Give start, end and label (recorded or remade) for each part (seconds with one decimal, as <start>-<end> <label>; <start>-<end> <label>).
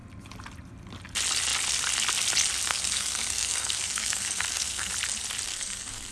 0.0-2.7 recorded; 2.7-4.9 remade; 4.9-5.5 recorded; 5.5-6.1 remade